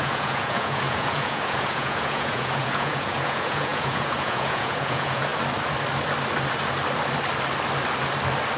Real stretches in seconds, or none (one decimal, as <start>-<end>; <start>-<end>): 5.3-8.6